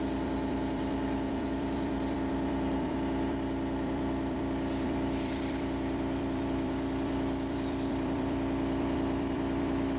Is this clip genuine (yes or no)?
no